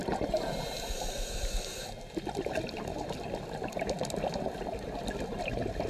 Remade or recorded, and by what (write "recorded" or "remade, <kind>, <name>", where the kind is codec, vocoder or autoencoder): recorded